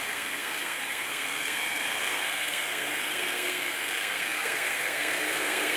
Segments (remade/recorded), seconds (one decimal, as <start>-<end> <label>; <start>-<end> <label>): 0.0-5.8 remade